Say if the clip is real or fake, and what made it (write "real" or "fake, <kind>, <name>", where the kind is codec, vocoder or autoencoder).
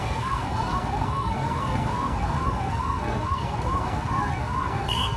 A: fake, codec, SNAC